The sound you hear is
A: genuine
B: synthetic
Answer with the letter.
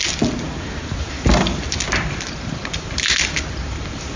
A